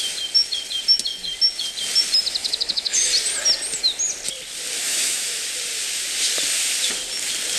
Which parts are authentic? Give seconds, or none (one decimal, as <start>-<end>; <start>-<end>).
0.0-2.4; 3.1-4.8; 5.4-7.6